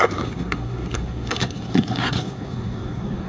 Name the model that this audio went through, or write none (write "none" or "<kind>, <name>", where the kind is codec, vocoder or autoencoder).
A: codec, SNAC